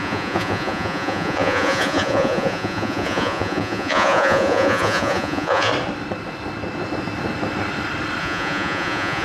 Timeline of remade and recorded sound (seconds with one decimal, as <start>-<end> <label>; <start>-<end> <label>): 0.0-5.7 remade; 5.7-8.2 recorded; 8.2-9.2 remade